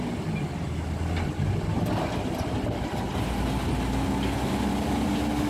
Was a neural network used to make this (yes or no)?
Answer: no